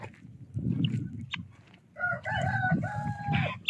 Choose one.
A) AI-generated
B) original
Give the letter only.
B